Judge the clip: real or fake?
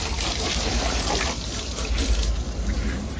fake